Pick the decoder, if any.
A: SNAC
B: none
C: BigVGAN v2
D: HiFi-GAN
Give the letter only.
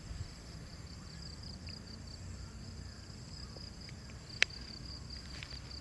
C